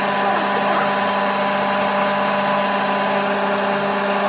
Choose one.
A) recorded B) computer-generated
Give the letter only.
A